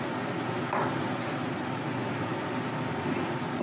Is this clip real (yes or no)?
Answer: yes